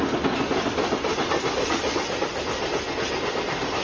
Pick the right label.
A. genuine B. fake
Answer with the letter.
A